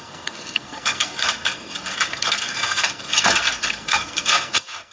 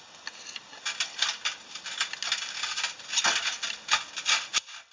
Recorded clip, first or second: second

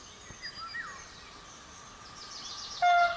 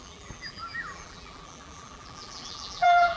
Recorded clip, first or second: first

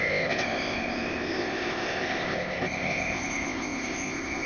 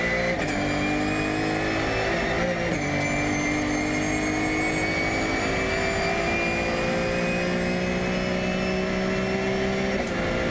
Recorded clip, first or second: second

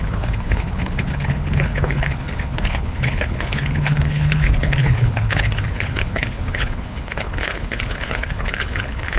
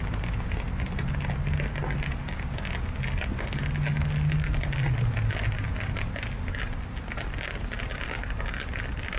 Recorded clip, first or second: second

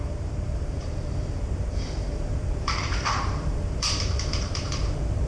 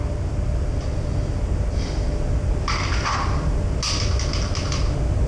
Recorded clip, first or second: second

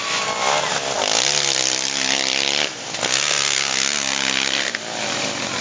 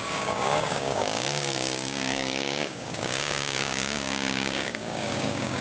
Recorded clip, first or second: first